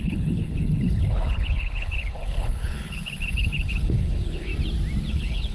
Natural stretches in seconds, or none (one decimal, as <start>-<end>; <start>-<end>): 4.5-5.1